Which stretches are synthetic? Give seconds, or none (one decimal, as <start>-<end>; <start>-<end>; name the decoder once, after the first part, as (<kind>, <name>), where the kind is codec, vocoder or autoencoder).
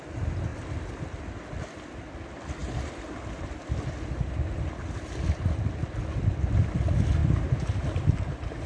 none